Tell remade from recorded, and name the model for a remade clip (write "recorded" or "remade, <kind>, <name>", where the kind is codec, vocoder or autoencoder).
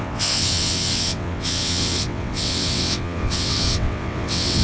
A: remade, vocoder, WaveNeXt